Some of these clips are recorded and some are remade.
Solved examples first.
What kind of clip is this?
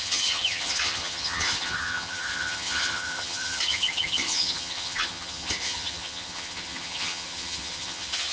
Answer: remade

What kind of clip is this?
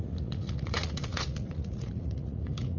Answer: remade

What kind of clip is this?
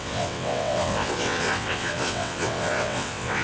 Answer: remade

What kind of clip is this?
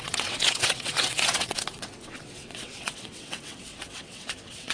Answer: remade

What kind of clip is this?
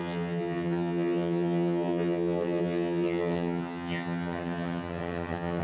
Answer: remade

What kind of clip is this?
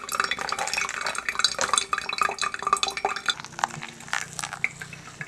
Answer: recorded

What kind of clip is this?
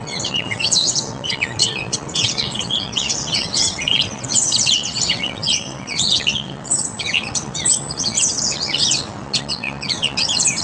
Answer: remade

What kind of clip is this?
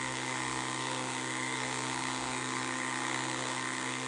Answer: remade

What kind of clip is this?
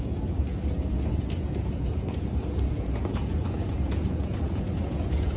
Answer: remade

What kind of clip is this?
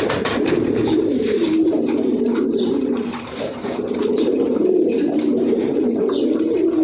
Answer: remade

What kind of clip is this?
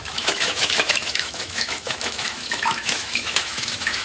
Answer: remade